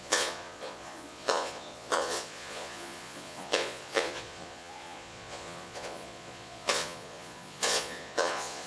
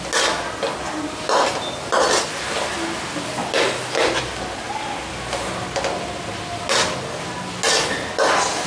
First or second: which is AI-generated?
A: first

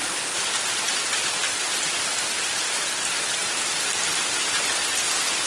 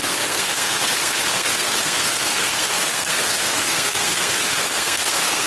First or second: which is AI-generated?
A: second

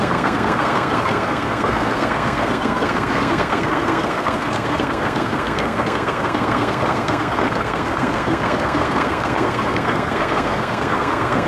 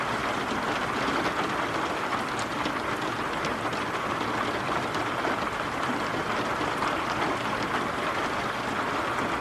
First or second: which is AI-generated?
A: first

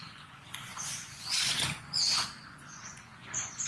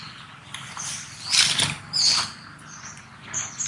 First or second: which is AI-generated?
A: first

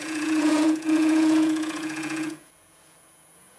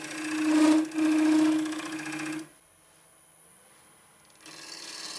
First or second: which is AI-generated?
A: first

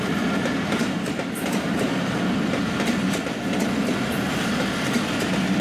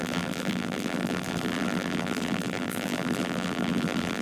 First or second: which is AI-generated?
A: second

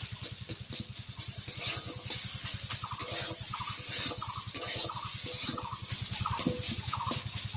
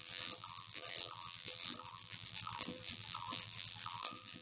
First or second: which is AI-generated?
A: second